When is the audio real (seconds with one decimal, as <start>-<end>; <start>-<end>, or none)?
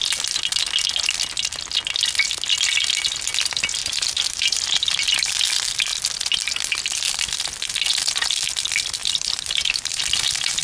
0.0-3.8; 5.3-9.0; 10.0-10.6